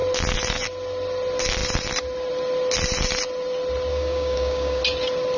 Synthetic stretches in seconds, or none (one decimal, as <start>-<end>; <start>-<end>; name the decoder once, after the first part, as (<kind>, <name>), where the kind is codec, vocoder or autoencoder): 3.9-4.8 (codec, DAC)